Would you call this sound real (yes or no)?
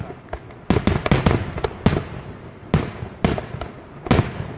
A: yes